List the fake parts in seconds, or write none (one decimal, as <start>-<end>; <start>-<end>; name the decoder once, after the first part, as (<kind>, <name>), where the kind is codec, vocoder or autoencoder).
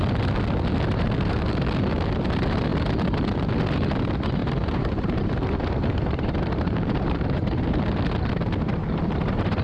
4.4-8.1 (vocoder, BigVGAN v2)